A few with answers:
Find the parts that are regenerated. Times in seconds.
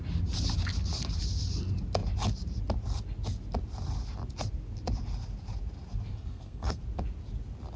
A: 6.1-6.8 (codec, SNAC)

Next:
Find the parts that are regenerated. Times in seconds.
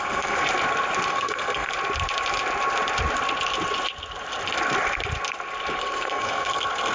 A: 0.0-0.4 (codec, SNAC); 1.1-1.7; 5.8-6.9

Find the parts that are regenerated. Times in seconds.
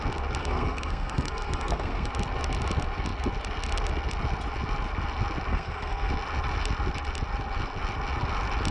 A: 0.4-2.1 (codec, SNAC); 5.5-6.1